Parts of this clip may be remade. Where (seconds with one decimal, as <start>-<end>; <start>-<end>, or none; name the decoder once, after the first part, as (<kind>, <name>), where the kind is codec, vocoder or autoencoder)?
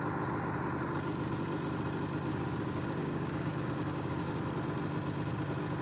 2.3-4.4 (codec, DAC)